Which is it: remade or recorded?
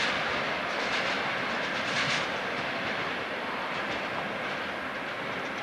recorded